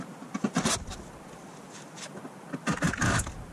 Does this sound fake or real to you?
real